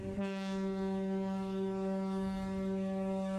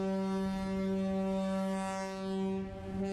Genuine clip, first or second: second